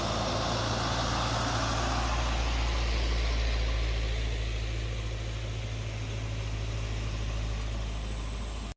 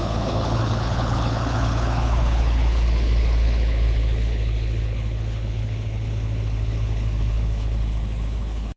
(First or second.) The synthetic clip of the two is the second